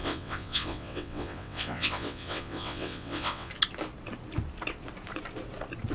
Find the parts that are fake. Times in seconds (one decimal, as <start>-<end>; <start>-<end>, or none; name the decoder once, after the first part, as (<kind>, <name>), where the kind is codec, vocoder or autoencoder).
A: 0.0-3.5 (vocoder, WaveNeXt)